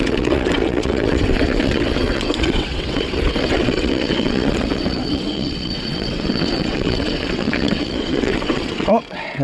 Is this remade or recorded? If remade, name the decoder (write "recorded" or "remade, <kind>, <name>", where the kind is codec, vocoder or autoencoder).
remade, vocoder, WaveNeXt